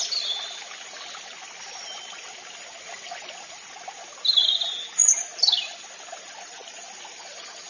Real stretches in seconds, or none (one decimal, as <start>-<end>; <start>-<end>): 0.0-7.7